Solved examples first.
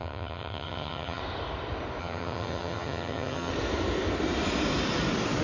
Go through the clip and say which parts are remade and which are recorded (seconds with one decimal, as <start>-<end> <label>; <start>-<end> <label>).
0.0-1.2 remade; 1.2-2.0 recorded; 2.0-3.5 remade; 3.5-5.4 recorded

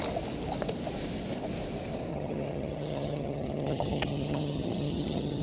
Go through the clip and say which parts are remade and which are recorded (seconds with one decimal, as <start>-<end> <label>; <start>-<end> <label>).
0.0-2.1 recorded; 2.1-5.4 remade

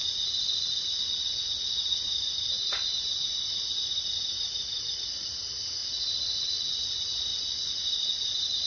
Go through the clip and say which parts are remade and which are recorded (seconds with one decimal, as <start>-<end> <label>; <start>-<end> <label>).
0.0-8.7 recorded